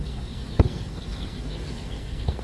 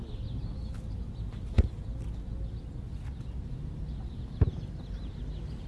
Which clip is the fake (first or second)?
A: first